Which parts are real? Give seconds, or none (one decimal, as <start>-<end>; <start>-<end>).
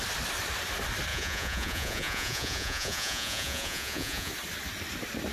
0.0-1.1; 4.3-5.3